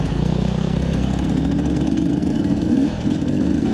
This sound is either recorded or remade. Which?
remade